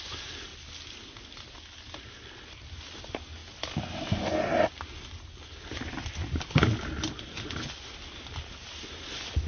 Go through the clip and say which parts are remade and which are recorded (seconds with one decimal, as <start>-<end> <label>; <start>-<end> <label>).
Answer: 0.0-9.5 recorded